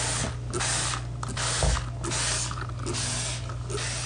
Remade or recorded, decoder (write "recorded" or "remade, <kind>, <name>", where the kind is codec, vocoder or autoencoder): recorded